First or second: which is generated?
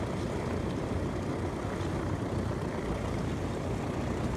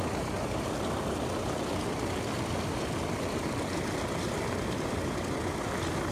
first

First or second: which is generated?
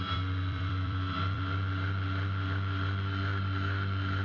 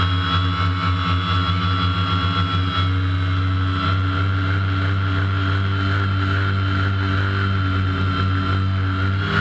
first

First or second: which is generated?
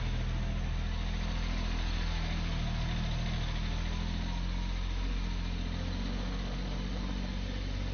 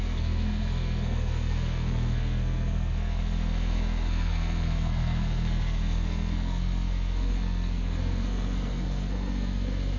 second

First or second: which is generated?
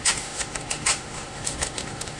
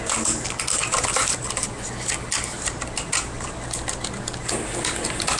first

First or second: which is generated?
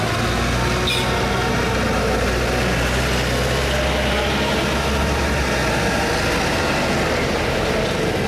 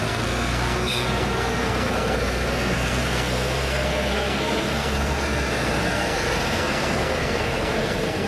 second